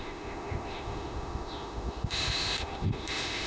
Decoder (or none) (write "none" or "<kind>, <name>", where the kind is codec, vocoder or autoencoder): autoencoder, DAC-VAE